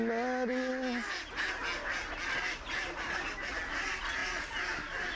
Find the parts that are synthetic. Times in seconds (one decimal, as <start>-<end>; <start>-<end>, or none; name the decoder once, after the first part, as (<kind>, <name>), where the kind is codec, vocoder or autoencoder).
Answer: none